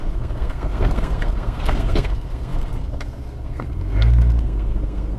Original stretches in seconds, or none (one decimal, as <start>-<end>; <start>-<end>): none